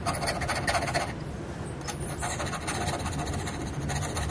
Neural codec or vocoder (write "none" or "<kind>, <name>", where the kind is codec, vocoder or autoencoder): none